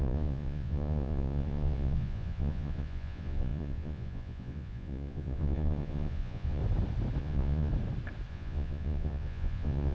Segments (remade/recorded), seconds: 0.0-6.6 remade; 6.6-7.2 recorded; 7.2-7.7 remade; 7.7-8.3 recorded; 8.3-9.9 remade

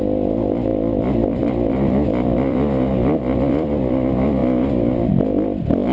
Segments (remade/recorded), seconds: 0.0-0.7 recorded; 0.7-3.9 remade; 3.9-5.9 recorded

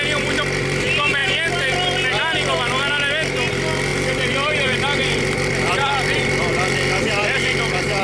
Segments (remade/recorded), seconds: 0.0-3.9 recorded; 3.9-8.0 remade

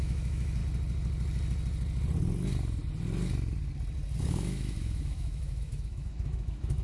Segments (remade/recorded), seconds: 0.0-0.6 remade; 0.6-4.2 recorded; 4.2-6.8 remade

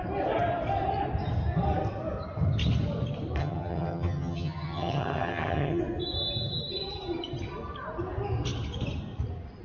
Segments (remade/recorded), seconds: 0.0-3.4 recorded; 3.4-5.8 remade; 5.8-9.6 recorded